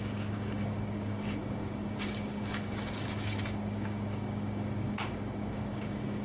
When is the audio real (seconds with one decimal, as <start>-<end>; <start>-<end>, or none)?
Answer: none

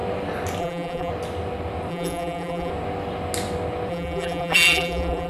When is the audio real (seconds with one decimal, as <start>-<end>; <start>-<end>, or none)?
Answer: 0.0-0.6; 1.1-1.9; 2.7-3.9

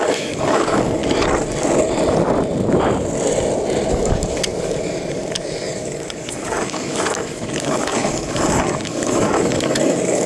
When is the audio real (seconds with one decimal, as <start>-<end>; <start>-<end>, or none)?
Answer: 1.0-3.9

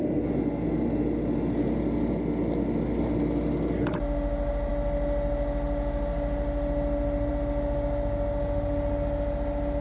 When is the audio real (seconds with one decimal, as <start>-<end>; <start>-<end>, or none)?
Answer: 0.0-9.8

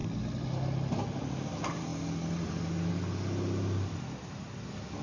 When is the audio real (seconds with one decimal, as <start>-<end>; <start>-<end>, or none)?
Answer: 0.0-5.0